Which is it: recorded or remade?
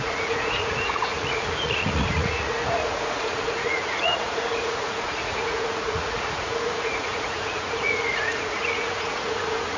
remade